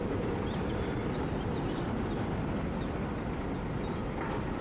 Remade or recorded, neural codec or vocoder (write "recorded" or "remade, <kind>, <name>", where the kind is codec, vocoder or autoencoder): remade, vocoder, BigVGAN v2